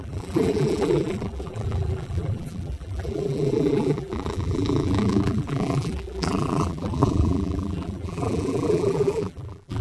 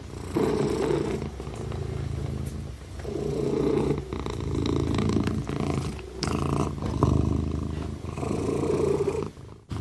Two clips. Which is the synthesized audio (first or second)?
first